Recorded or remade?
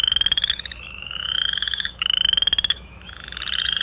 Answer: remade